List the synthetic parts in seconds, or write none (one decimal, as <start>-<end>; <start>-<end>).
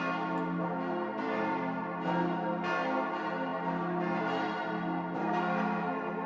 5.2-6.3